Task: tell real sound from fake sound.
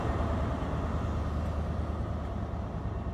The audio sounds real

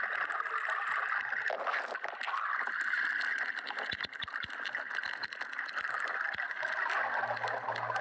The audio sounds real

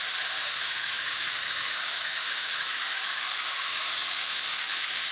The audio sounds fake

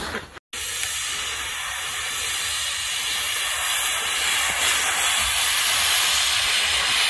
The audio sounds real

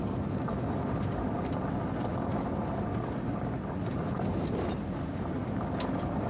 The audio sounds real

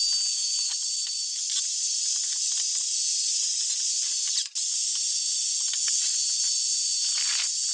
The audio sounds real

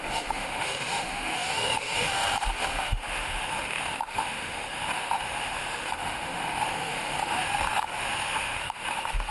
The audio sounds fake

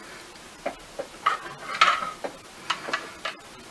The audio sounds real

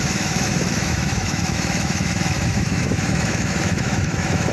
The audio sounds fake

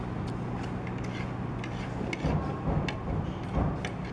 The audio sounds real